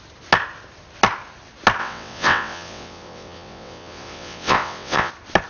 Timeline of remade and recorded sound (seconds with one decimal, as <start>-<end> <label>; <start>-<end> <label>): 0.0-1.8 recorded; 1.8-5.1 remade; 5.1-5.5 recorded